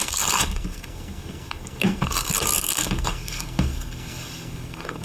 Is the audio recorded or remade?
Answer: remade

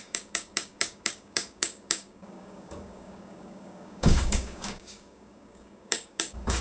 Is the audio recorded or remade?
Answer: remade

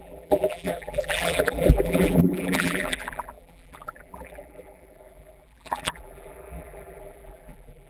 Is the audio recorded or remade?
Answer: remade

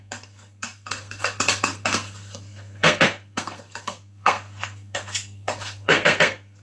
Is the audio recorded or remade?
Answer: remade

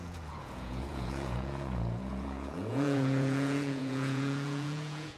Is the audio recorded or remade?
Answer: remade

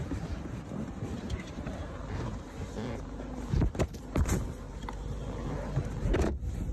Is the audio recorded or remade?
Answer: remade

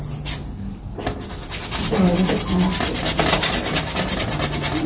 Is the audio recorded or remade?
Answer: recorded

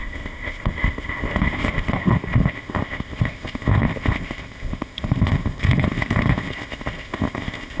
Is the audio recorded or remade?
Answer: remade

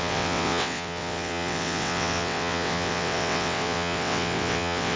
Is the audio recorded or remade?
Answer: remade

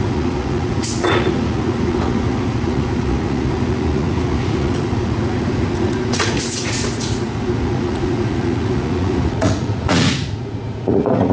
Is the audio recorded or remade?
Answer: remade